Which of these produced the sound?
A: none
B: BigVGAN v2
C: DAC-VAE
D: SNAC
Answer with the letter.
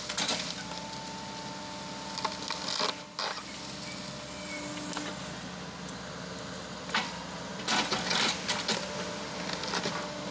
A